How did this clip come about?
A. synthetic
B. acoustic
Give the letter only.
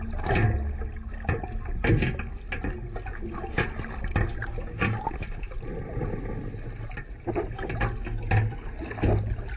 B